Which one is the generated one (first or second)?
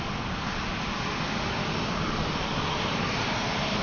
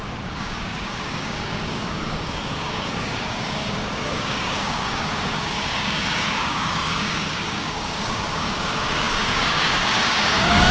second